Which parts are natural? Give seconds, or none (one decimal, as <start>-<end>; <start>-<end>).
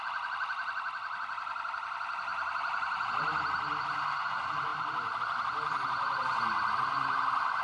0.0-7.6